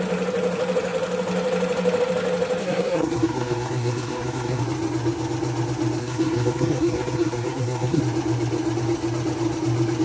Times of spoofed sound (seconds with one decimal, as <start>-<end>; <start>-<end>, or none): 2.6-4.6; 6.0-8.0